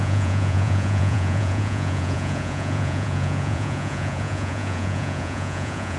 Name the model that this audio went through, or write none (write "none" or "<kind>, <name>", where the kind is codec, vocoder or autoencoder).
vocoder, Vocos